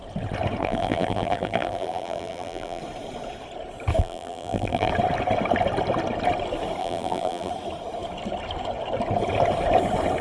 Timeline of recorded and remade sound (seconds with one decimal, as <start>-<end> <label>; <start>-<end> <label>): 0.0-0.6 recorded; 0.6-2.8 remade; 2.8-4.0 recorded; 4.0-4.9 remade; 4.9-6.8 recorded; 6.8-7.5 remade; 7.5-10.2 recorded